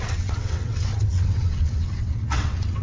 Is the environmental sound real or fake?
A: fake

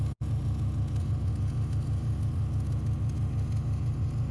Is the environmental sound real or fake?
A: real